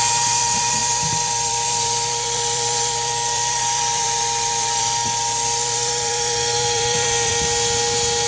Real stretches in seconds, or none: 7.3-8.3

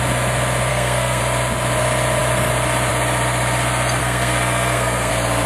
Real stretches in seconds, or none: 0.0-0.7; 1.2-4.0; 5.1-5.5

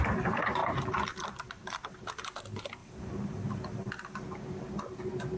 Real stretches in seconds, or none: 0.0-0.6; 2.4-2.8; 5.0-5.4

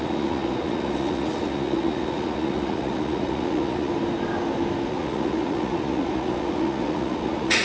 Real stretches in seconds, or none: 3.9-4.9

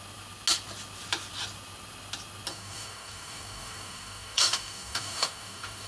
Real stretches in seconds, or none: 0.0-2.5

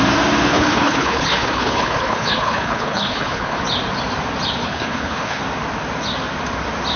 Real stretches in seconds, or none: 0.0-0.5; 3.6-4.6; 5.4-7.0

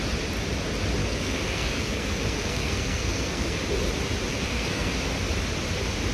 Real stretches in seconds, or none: 0.0-1.0; 3.6-4.3; 4.9-6.1